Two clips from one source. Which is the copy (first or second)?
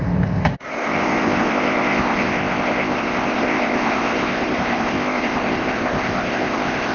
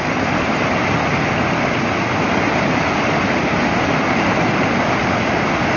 first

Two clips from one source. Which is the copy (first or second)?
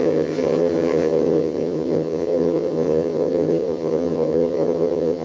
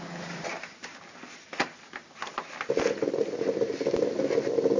first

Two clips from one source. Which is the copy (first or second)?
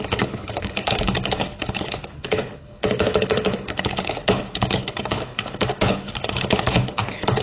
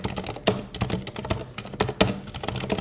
first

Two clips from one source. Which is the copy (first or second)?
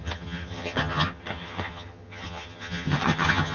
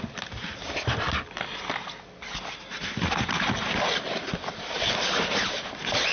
first